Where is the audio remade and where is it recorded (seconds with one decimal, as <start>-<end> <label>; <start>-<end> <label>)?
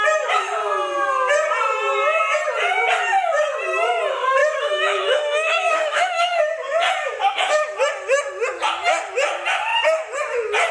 0.0-4.4 recorded; 4.4-6.4 remade; 6.4-10.7 recorded